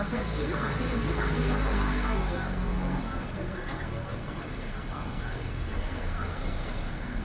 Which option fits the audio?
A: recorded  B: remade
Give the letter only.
B